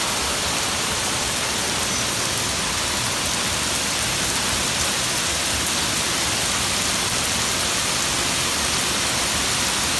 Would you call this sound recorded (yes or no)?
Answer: no